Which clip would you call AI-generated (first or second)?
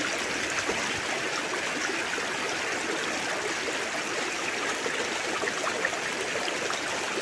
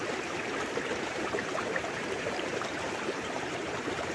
second